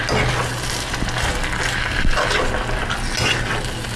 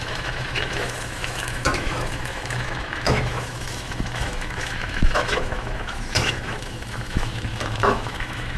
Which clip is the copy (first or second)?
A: second